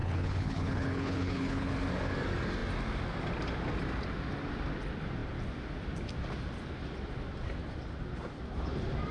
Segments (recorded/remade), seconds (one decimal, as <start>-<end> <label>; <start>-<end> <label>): 0.0-1.7 remade; 1.7-9.1 recorded